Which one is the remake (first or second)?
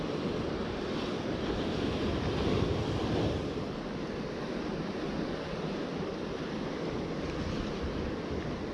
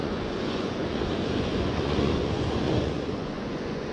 second